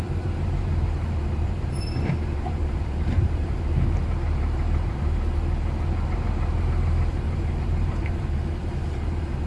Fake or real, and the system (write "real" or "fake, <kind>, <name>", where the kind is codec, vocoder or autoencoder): fake, vocoder, BigVGAN v2